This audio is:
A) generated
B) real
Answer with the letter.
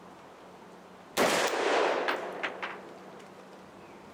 B